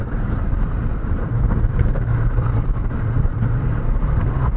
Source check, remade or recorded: remade